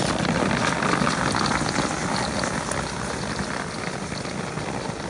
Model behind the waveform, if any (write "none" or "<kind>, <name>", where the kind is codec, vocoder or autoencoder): none